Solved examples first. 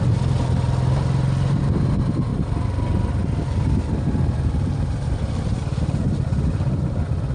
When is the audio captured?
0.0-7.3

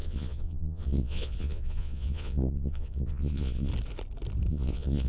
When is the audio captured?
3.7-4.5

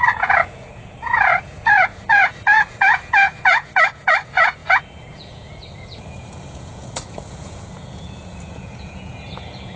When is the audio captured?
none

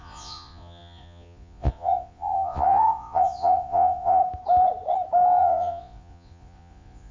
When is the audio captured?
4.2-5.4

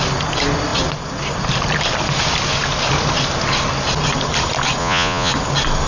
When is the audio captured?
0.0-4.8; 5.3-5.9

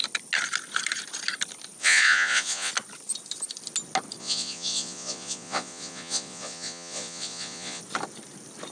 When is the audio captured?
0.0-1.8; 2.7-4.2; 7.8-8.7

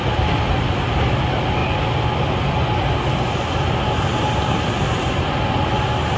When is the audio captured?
0.0-6.2